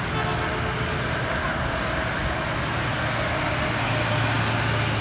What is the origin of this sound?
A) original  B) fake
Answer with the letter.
A